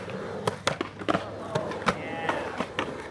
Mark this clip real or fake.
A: real